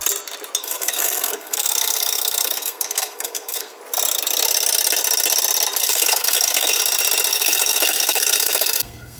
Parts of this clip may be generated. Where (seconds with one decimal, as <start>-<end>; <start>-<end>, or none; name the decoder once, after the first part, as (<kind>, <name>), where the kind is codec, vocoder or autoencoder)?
0.6-3.8 (codec, SNAC); 5.8-6.8; 7.3-9.2